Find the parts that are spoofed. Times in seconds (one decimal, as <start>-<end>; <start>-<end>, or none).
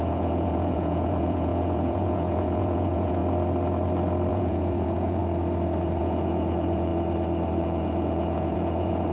0.0-3.2; 4.3-5.2; 6.0-6.9; 7.6-9.1